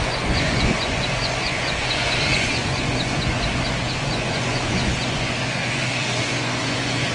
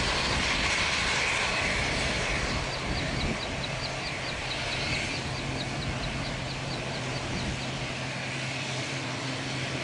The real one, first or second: second